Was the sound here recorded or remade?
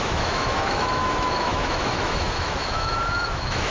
remade